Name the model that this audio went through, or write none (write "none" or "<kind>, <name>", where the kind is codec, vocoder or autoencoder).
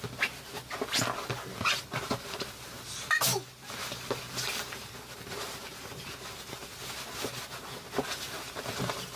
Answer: none